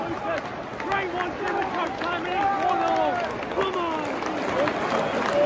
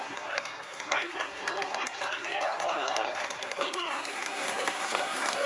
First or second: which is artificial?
second